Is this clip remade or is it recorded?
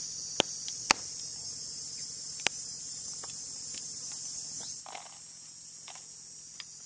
recorded